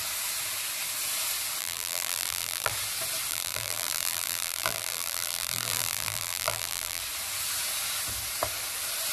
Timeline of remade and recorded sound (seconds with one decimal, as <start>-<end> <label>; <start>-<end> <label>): 0.0-1.6 recorded; 1.6-2.7 remade; 2.7-3.3 recorded; 3.3-7.0 remade; 7.0-9.1 recorded